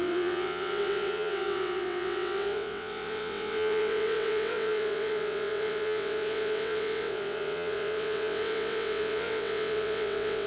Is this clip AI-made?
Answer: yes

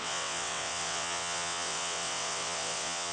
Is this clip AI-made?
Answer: yes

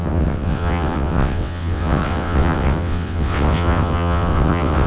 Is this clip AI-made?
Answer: yes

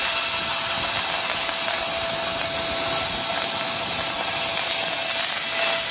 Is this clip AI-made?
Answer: no